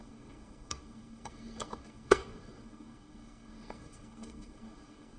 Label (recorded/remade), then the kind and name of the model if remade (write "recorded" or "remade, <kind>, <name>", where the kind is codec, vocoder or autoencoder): remade, codec, SNAC